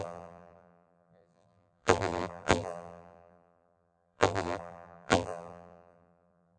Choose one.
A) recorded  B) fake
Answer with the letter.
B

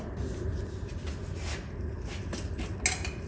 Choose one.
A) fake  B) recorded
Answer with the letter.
B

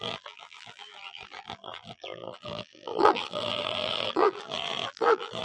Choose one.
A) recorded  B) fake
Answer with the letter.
B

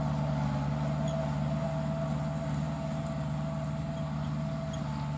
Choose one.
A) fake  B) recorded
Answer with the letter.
B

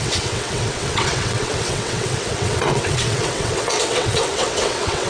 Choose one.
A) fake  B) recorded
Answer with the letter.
A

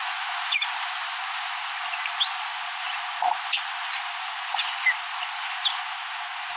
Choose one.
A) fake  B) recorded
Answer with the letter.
B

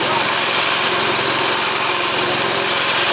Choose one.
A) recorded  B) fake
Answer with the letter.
A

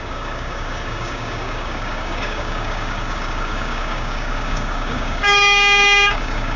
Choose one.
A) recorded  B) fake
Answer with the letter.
B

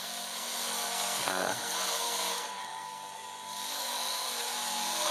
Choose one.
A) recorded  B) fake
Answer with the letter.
B